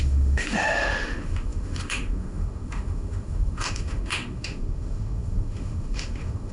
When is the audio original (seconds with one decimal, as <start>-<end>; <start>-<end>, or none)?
none